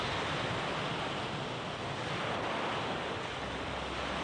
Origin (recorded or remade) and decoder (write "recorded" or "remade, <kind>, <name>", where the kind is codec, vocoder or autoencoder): recorded